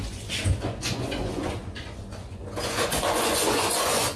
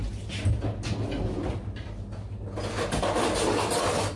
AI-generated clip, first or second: first